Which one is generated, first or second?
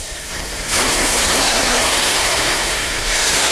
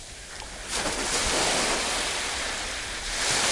first